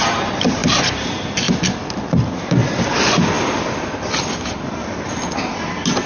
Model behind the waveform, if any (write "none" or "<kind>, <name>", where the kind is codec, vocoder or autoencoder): none